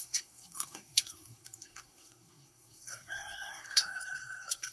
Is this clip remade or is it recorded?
remade